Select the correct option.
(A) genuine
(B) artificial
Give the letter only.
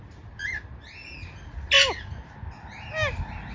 A